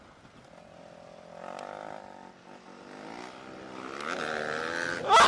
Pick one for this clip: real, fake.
real